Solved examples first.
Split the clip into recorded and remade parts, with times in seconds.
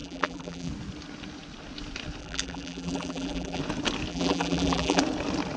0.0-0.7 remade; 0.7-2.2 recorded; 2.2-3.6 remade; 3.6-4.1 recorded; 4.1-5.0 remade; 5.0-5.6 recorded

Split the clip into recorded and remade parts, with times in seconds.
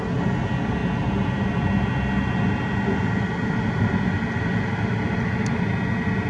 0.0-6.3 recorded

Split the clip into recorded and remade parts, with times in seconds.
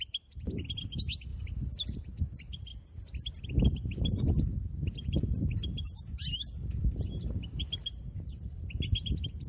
0.0-6.8 recorded; 6.8-9.1 remade; 9.1-9.5 recorded